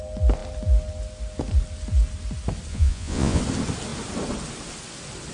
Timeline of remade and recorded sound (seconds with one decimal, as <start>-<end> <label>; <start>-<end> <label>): 0.0-2.7 recorded; 2.7-3.4 remade; 3.4-5.3 recorded